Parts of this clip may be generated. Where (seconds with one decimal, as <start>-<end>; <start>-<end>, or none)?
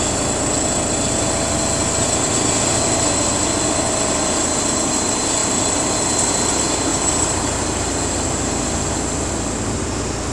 5.4-6.0; 6.9-8.6